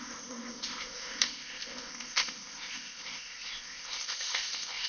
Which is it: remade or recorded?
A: remade